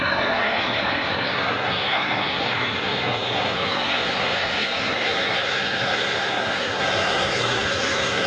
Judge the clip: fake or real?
fake